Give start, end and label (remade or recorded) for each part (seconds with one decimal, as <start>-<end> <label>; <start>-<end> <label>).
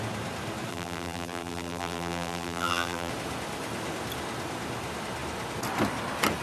0.0-0.7 recorded; 0.7-3.1 remade; 3.1-6.4 recorded